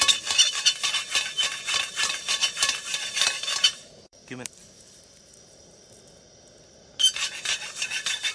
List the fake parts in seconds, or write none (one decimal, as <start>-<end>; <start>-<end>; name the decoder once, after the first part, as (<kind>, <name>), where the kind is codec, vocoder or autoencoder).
0.0-1.1 (vocoder, BigVGAN v2); 1.9-4.2; 7.4-8.3